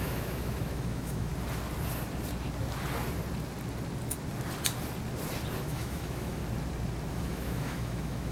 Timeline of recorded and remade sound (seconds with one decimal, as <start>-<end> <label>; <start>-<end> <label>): 0.0-1.3 remade; 1.3-5.6 recorded; 5.6-6.4 remade; 6.4-7.1 recorded; 7.1-8.3 remade